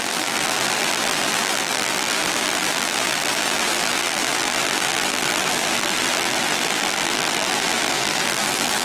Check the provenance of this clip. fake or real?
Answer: fake